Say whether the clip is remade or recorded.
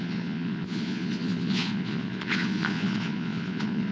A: remade